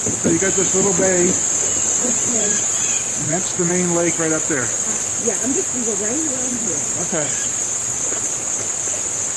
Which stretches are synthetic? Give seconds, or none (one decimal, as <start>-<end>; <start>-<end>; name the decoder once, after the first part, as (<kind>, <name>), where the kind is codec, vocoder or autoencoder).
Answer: 2.0-3.7 (vocoder, Vocos); 6.5-8.4